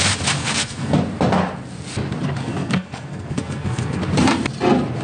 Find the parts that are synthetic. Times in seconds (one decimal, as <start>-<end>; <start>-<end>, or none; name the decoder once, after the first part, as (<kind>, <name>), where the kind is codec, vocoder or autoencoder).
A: 0.4-1.0 (codec, SNAC); 2.4-4.0